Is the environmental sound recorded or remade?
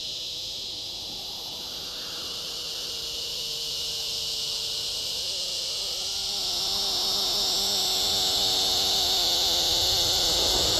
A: recorded